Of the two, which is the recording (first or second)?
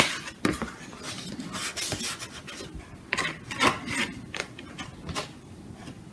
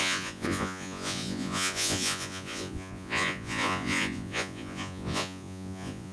first